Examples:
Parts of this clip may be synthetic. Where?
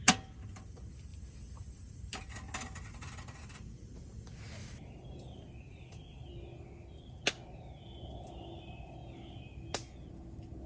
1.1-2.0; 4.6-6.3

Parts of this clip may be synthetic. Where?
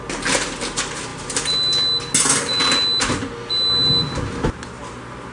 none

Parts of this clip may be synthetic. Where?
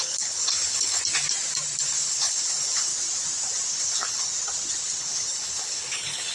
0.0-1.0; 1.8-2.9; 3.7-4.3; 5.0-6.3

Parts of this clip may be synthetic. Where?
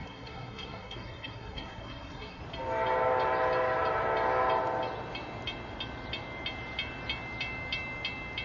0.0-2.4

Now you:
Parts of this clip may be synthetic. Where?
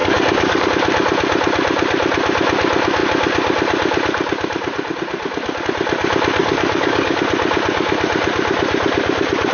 0.0-0.7; 6.4-7.2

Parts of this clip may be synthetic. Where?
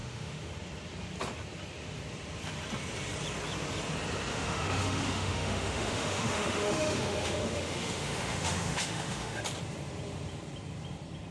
0.0-0.5; 4.3-9.4